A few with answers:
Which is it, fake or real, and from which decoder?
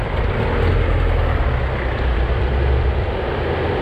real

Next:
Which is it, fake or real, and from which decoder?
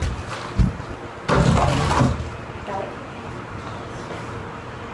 real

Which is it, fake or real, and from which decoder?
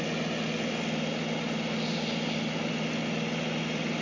real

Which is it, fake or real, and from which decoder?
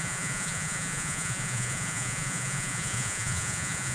fake, vocoder, Vocos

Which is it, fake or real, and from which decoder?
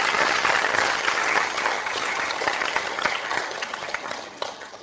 fake, vocoder, HiFi-GAN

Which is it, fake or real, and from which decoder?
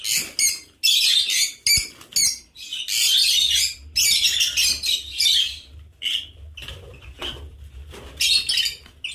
real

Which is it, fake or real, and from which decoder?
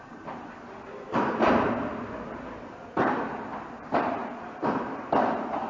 real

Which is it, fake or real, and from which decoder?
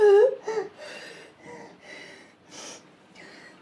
real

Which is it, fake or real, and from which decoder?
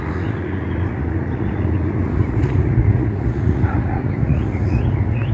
fake, vocoder, Vocos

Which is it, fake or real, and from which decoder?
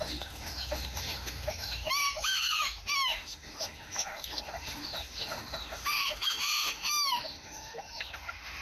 fake, autoencoder, DAC-VAE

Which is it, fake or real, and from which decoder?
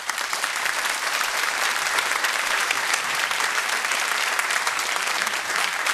fake, vocoder, BigVGAN v2